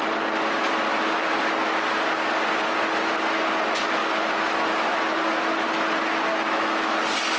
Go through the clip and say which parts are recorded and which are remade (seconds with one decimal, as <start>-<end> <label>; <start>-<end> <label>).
0.0-4.0 recorded; 4.0-5.0 remade; 5.0-6.3 recorded; 6.3-7.0 remade; 7.0-7.4 recorded